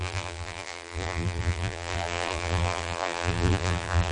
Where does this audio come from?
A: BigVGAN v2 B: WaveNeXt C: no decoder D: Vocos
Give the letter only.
A